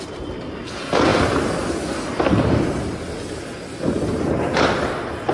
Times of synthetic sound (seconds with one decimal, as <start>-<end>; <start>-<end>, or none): none